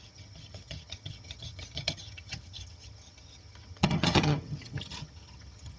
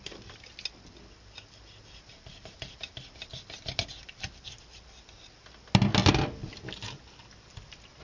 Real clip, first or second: second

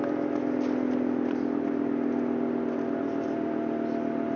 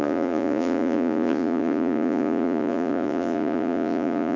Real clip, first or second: first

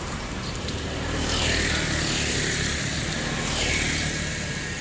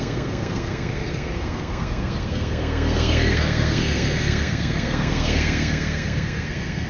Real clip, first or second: first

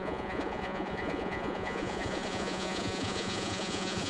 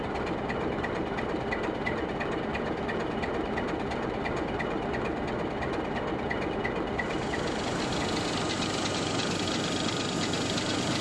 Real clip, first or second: second